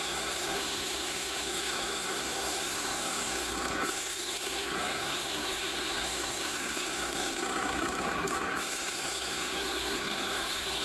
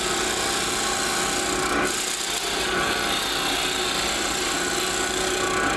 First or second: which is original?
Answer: second